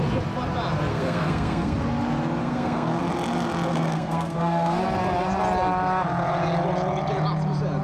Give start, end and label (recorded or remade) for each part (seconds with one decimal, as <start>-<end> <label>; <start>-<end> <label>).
0.0-0.9 recorded; 0.9-1.8 remade; 1.8-2.4 recorded; 2.4-3.0 remade; 3.0-3.7 recorded; 3.7-4.8 remade; 4.8-7.8 recorded

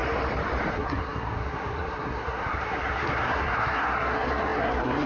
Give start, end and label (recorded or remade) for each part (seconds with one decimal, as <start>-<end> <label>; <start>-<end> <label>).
0.0-0.7 recorded; 0.7-5.1 remade

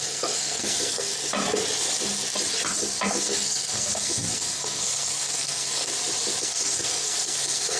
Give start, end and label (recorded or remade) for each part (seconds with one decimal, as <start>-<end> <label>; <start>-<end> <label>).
0.0-1.1 remade; 1.1-3.1 recorded; 3.1-5.9 remade; 5.9-6.4 recorded; 6.4-7.8 remade

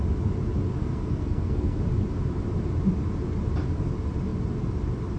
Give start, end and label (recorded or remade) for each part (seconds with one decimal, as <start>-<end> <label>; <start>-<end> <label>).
0.0-0.8 recorded; 0.8-1.8 remade; 1.8-5.2 recorded